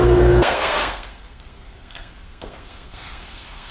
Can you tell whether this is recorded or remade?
remade